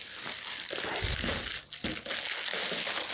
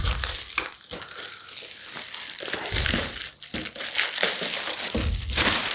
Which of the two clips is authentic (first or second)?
first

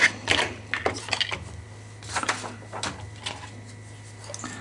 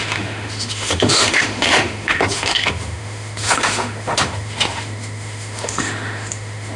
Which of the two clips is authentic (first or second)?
first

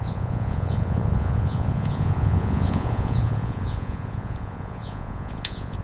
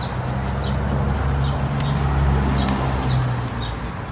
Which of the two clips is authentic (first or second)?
second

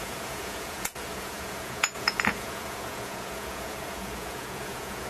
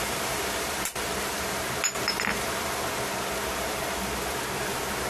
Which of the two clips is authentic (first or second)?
second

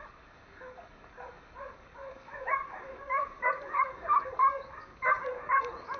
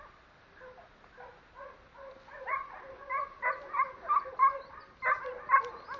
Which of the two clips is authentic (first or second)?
second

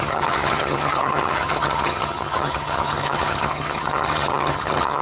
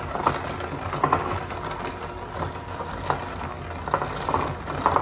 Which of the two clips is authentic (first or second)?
second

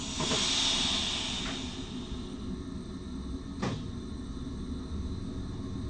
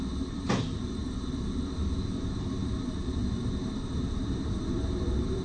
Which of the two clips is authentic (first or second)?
first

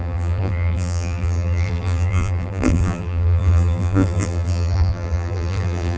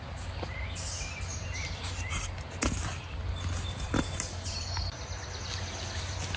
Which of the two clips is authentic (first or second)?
second